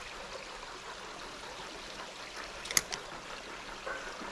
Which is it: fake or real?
real